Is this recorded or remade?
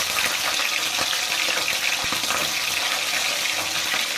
recorded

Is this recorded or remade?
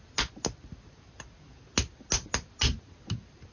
recorded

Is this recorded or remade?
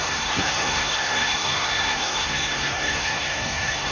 remade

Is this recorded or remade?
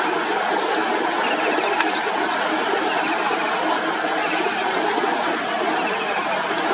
recorded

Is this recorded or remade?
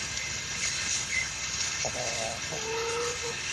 remade